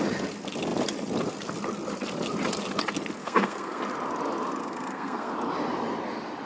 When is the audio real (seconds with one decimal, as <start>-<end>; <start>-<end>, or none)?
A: 0.0-3.2; 3.8-4.6; 5.3-6.5